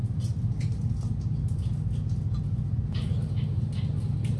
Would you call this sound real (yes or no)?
yes